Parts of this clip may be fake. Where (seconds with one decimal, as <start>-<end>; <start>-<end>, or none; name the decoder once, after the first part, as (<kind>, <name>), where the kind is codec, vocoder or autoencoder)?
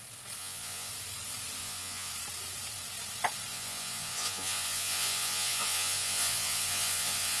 0.4-0.9 (vocoder, Vocos); 1.6-2.1; 3.5-7.4